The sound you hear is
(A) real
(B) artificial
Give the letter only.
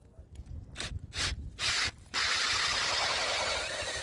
A